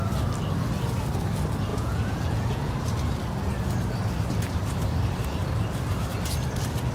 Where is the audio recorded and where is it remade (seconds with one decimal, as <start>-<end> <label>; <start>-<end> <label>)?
0.0-1.7 recorded; 1.7-2.7 remade; 2.7-6.9 recorded